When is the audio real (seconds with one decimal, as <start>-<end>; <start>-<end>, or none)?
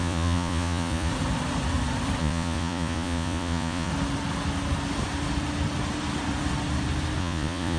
1.1-2.2; 3.9-7.2